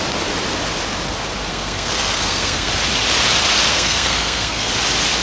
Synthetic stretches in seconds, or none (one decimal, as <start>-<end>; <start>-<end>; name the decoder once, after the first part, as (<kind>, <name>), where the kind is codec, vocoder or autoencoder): 1.5-2.7 (codec, SNAC); 3.7-4.7